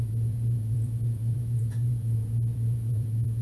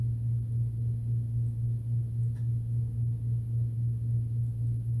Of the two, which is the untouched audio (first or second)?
second